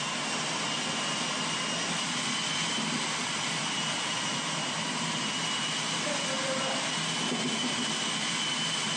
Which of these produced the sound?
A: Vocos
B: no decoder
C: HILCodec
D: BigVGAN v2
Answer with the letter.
B